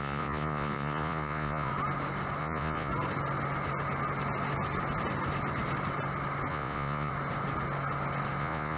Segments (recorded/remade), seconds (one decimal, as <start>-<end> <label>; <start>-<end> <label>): 0.0-1.7 remade; 1.7-2.4 recorded; 2.4-2.9 remade; 2.9-6.5 recorded; 6.5-7.1 remade; 7.1-8.4 recorded; 8.4-8.8 remade